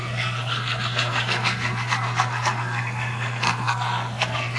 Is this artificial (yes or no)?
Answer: yes